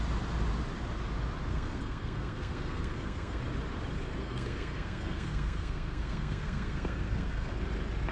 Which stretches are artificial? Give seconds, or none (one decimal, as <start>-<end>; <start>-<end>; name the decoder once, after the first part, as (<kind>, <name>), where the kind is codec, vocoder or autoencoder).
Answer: 1.5-3.4 (codec, SNAC); 4.2-7.5